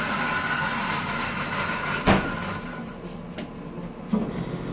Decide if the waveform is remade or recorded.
recorded